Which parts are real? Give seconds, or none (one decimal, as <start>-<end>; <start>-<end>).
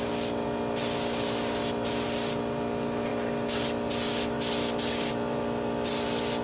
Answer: 0.0-6.4